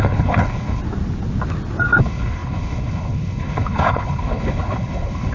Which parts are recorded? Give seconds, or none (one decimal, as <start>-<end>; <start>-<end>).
0.8-2.0